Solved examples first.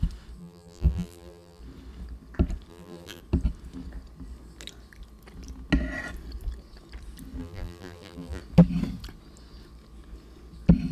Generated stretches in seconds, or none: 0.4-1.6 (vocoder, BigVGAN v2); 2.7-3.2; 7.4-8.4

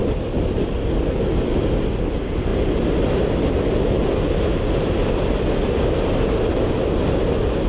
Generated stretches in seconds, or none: none

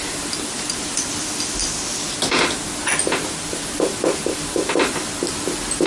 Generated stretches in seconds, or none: 0.0-1.6 (vocoder, BigVGAN v2); 3.4-5.9